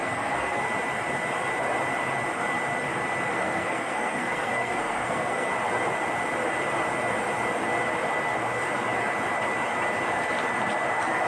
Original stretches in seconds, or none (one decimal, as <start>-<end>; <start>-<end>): 0.6-3.3; 5.5-11.3